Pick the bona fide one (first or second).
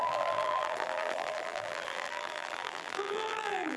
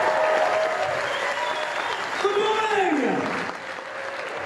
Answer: second